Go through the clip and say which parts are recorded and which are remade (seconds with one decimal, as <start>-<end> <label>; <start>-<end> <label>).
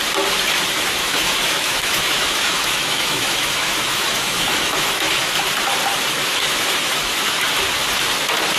0.0-1.0 recorded; 1.0-5.4 remade; 5.4-6.2 recorded; 6.2-7.4 remade; 7.4-8.6 recorded